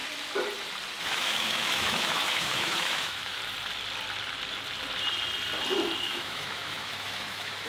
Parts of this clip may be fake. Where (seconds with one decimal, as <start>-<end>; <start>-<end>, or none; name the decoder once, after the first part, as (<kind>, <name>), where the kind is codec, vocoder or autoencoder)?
1.0-3.4 (autoencoder, DAC-VAE); 6.0-7.7